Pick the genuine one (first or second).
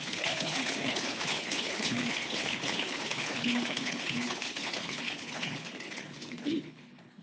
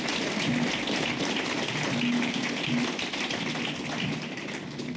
second